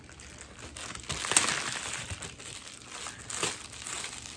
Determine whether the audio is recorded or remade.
recorded